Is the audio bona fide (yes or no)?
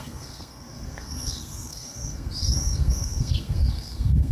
no